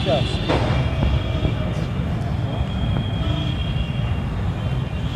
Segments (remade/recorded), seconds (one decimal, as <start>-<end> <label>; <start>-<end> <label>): 0.0-5.2 recorded